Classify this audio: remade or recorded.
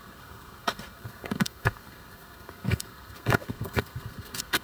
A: remade